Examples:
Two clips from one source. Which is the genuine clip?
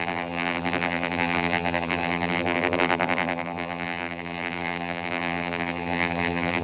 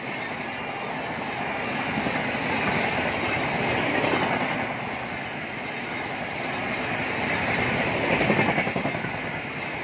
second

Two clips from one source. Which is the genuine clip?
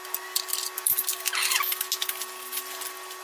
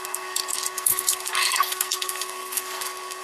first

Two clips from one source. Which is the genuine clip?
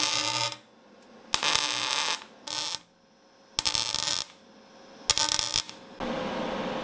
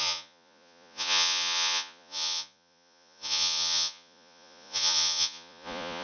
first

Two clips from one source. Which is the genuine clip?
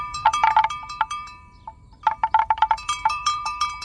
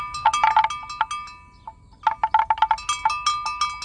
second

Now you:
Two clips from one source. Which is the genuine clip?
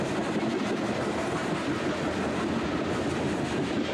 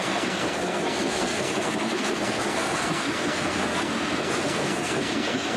first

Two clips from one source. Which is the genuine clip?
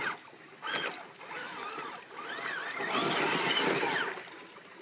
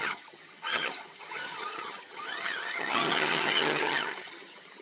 first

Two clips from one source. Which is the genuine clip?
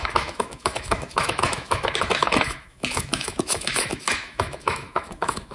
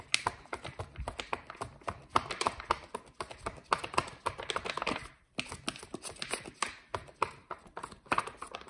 second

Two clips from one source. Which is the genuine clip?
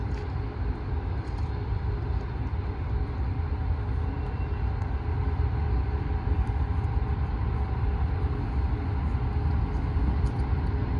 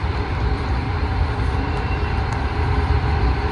first